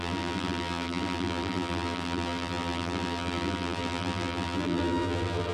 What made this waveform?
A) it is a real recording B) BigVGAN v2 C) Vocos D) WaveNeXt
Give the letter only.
B